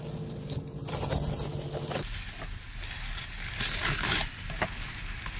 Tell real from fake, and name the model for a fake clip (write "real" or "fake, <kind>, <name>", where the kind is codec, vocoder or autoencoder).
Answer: real